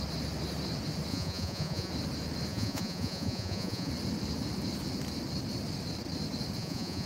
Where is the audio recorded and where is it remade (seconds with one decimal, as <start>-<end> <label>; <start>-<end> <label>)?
0.0-1.1 recorded; 1.1-1.9 remade; 1.9-2.5 recorded; 2.5-3.9 remade; 3.9-6.6 recorded; 6.6-7.1 remade